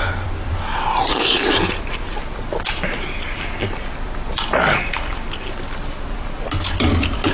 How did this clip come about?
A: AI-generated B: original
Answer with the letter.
B